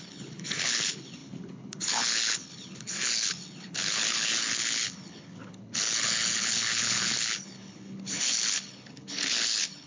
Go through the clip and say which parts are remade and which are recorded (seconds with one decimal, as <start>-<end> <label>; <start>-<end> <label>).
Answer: 0.0-9.9 remade